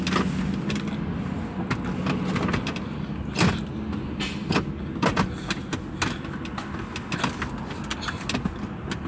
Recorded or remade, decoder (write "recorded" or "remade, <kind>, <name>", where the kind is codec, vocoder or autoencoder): recorded